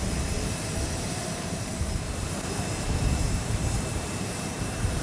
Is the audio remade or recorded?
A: remade